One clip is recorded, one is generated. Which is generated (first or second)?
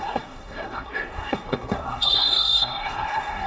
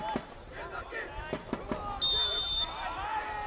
first